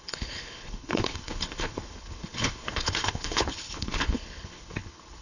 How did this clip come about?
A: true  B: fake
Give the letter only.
B